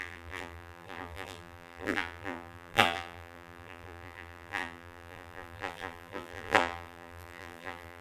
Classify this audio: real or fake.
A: fake